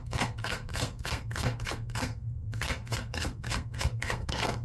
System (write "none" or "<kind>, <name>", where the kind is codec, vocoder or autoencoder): codec, SNAC